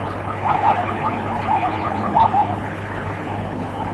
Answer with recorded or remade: remade